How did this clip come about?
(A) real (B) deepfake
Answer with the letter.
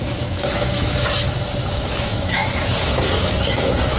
B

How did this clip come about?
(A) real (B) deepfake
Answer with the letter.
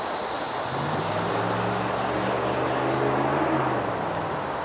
A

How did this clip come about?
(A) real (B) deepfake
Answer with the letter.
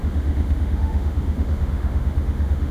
B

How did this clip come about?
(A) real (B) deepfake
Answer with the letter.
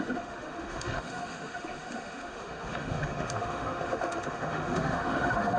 B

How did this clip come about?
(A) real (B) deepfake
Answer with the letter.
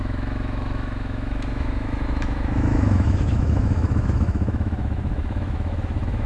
B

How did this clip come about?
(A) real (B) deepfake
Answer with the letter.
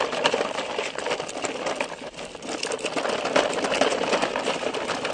A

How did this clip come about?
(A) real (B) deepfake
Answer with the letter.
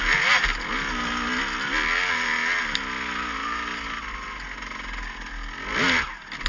A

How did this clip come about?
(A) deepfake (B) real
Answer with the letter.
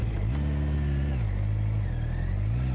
B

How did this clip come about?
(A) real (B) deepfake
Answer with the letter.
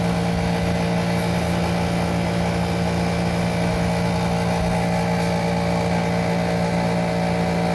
A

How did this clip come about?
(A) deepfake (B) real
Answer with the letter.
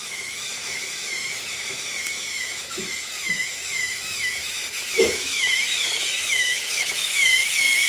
A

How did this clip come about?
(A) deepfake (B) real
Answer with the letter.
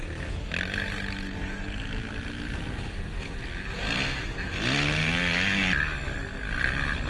B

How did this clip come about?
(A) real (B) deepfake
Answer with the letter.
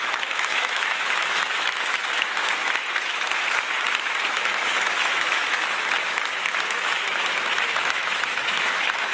B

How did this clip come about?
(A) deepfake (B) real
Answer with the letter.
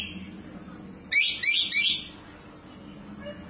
B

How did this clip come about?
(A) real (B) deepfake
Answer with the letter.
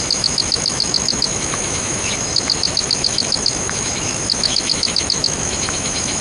B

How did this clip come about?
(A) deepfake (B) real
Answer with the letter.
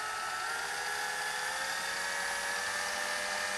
B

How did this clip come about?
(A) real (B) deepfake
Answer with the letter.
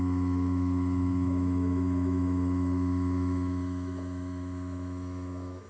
B